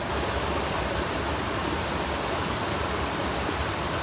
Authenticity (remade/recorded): recorded